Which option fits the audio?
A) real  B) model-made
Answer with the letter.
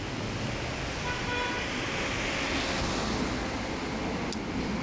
A